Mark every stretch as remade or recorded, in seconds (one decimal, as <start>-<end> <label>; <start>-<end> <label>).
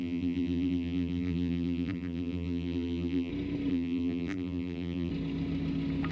0.0-3.3 remade; 3.3-3.7 recorded; 3.7-5.1 remade; 5.1-6.1 recorded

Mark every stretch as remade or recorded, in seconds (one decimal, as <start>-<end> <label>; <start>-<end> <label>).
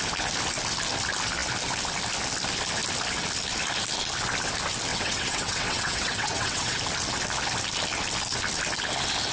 0.0-4.9 recorded; 4.9-6.8 remade; 6.8-9.3 recorded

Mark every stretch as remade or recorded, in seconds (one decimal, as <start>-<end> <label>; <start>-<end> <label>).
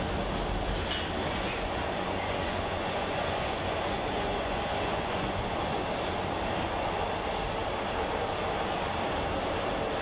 0.0-1.2 recorded; 1.2-5.8 remade; 5.8-10.0 recorded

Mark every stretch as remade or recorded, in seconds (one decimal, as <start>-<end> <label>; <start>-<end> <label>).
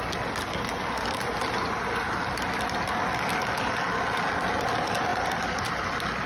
0.0-6.3 recorded